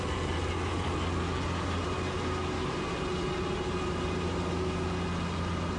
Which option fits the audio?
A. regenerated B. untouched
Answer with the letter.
B